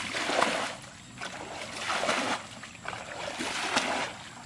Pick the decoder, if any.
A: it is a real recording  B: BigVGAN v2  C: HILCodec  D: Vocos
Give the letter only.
A